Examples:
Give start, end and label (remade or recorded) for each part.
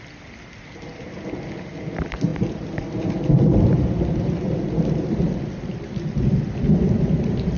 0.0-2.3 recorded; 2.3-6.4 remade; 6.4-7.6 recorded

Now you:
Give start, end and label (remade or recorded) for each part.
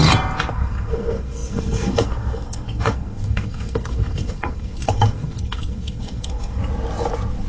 0.0-0.5 recorded; 0.5-6.6 remade; 6.6-7.5 recorded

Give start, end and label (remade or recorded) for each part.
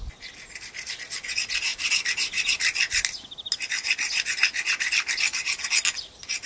0.0-6.5 recorded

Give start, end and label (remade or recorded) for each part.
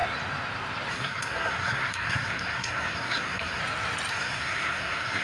0.0-0.9 recorded; 0.9-3.6 remade; 3.6-4.1 recorded; 4.1-5.2 remade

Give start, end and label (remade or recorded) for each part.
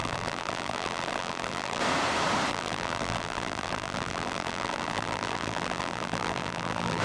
0.0-1.8 remade; 1.8-2.5 recorded; 2.5-7.0 remade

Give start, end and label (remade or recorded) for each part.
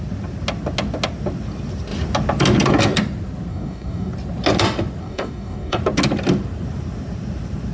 0.0-3.5 recorded; 3.5-4.1 remade; 4.1-5.0 recorded; 5.0-5.8 remade; 5.8-7.7 recorded